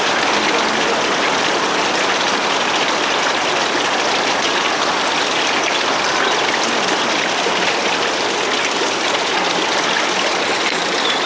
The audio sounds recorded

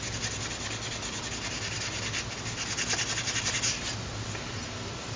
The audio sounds recorded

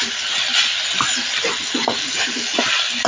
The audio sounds recorded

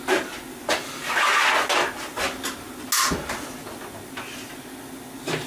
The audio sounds recorded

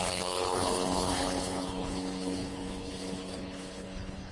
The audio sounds remade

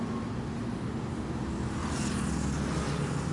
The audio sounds recorded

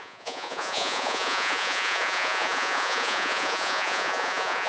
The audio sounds remade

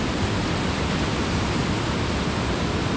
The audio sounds recorded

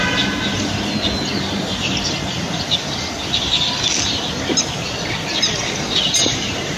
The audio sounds recorded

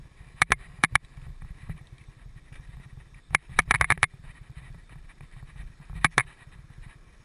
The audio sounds remade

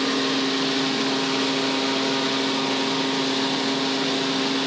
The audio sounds recorded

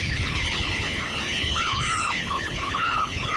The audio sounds remade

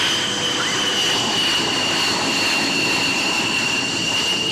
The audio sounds recorded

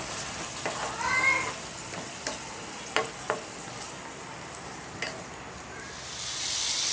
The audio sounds recorded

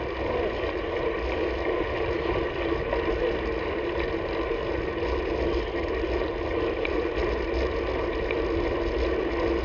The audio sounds recorded